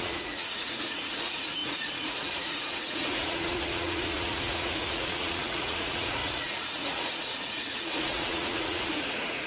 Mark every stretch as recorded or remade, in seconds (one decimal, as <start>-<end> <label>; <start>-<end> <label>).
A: 0.0-9.5 remade